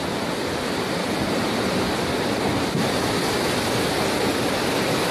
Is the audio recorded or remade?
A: recorded